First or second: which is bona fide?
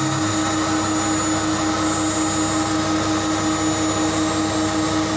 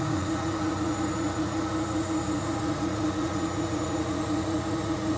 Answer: first